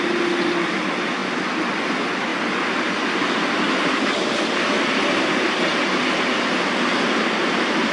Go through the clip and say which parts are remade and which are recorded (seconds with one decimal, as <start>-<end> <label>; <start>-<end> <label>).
0.0-7.9 recorded